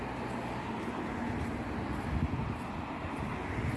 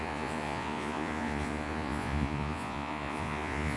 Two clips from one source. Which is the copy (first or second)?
second